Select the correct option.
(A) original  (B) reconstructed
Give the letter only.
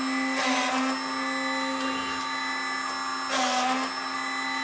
A